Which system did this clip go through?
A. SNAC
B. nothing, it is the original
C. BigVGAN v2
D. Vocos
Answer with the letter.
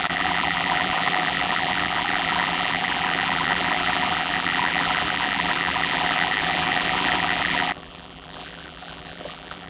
C